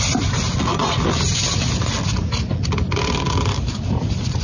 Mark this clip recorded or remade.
recorded